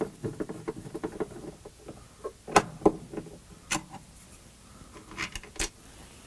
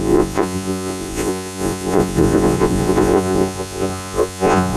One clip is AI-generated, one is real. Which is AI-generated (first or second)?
second